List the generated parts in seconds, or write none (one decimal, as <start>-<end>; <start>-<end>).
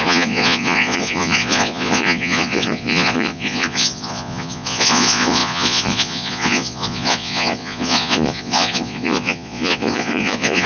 0.0-10.7